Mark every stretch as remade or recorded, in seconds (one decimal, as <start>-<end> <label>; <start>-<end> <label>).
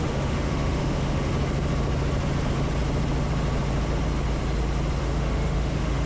0.0-1.3 remade; 1.3-5.0 recorded; 5.0-6.1 remade